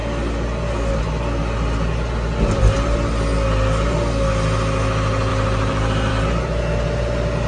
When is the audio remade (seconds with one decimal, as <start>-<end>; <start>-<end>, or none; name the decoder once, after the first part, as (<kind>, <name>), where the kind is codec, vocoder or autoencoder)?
5.3-6.1 (vocoder, BigVGAN v2)